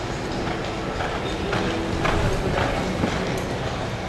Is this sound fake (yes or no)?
no